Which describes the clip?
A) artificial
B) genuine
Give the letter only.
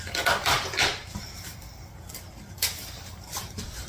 B